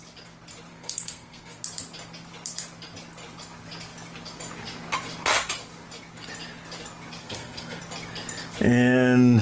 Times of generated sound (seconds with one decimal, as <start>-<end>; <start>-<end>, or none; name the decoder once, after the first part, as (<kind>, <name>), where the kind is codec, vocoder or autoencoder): 0.7-1.6 (codec, SNAC); 7.2-7.8